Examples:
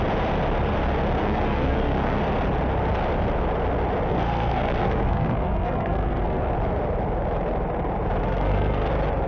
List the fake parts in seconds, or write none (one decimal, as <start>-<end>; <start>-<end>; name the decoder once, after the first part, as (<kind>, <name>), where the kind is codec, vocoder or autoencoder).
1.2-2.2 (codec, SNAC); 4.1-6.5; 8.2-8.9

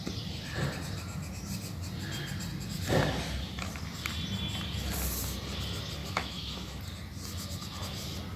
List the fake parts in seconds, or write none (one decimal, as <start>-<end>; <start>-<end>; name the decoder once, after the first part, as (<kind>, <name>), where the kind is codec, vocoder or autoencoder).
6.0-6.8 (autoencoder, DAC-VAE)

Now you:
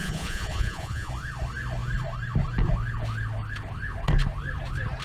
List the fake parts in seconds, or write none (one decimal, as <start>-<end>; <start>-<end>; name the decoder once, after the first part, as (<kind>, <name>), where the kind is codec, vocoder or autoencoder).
0.0-1.1 (vocoder, Vocos)